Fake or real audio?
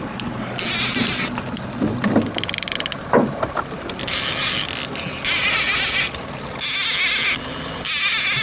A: real